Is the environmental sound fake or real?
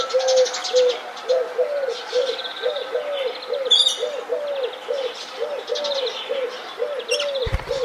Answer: real